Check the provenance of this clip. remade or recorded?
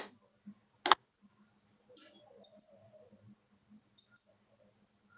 recorded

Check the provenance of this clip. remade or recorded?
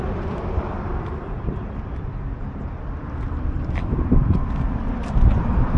remade